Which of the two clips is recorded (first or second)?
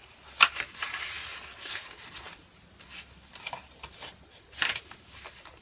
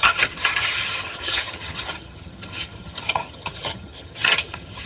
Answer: first